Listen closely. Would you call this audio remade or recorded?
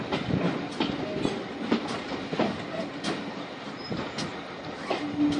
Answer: recorded